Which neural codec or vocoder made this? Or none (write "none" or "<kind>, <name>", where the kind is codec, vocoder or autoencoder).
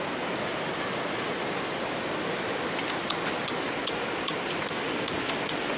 none